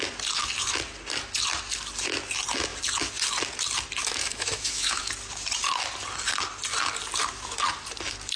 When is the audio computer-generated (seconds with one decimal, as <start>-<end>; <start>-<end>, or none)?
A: 4.0-5.1